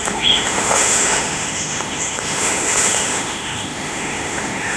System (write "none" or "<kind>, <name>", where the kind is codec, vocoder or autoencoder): autoencoder, DAC-VAE